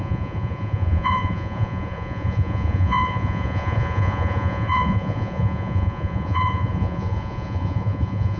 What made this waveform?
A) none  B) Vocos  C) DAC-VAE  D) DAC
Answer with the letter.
B